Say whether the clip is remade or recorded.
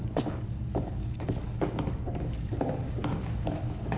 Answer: remade